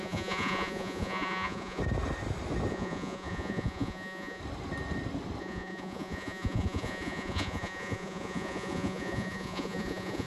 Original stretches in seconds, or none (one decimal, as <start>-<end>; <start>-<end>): 1.8-2.7; 4.4-5.4